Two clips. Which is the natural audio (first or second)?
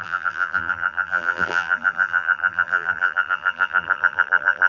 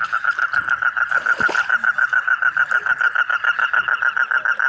second